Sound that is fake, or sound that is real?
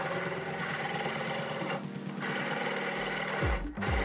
real